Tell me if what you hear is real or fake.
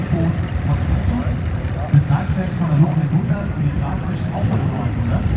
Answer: fake